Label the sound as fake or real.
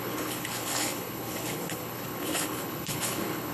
fake